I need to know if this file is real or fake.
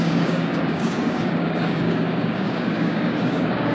fake